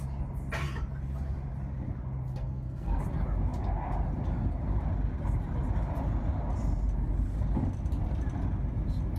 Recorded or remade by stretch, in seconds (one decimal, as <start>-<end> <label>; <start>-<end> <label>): 0.0-2.3 recorded; 2.3-3.0 remade; 3.0-9.2 recorded